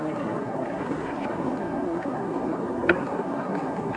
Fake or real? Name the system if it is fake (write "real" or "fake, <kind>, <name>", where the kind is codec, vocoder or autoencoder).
fake, codec, SNAC